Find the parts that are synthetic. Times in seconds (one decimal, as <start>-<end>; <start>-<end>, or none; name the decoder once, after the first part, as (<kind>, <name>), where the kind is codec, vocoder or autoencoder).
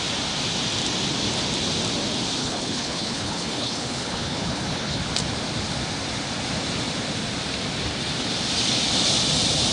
2.4-5.0 (codec, HILCodec)